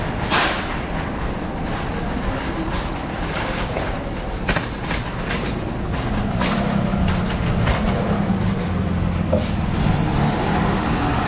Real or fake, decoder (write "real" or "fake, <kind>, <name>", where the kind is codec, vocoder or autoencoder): real